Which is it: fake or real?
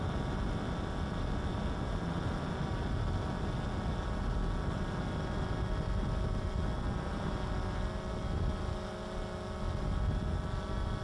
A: real